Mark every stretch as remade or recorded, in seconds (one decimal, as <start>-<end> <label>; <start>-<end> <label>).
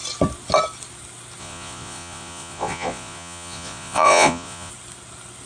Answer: 0.0-1.4 recorded; 1.4-4.7 remade; 4.7-5.5 recorded